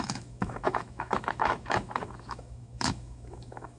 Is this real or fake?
fake